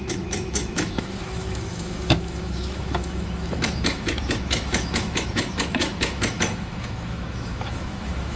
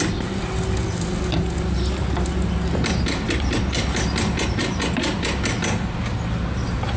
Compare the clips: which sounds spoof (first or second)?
first